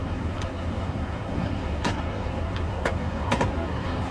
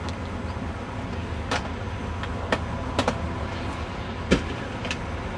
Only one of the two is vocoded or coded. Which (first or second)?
first